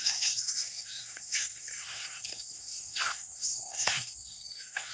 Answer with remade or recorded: remade